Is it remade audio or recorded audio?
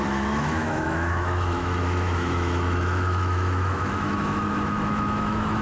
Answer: remade